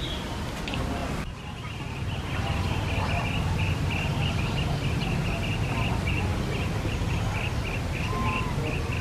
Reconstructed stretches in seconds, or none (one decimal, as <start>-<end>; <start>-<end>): none